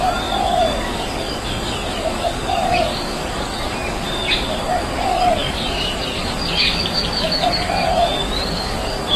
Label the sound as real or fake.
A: fake